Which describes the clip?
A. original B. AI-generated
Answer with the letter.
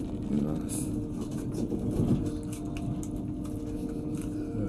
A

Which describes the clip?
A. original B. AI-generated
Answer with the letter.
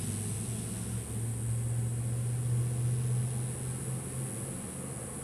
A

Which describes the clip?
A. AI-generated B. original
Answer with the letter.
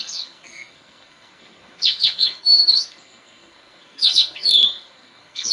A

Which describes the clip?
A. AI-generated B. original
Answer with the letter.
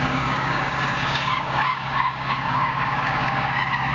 A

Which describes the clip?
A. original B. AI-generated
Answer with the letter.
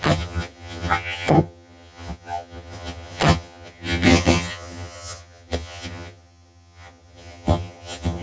B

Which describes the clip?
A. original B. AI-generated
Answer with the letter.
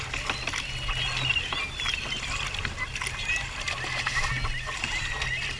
A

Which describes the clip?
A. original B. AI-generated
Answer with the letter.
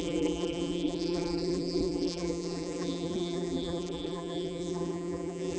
B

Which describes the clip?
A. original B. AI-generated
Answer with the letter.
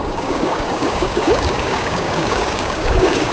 B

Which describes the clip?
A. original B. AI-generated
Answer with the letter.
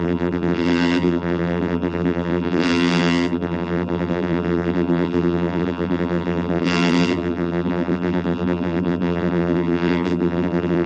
B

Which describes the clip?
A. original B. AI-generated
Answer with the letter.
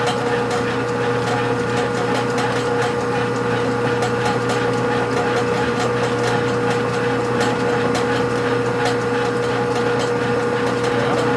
A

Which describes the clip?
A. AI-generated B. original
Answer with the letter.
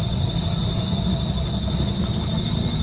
B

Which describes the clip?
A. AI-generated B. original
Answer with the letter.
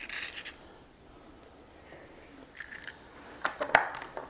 B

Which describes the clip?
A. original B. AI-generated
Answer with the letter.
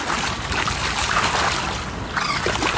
A